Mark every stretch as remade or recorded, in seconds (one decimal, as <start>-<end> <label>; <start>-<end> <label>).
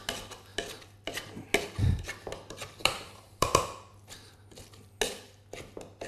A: 0.0-2.8 recorded; 2.8-3.6 remade; 3.6-6.1 recorded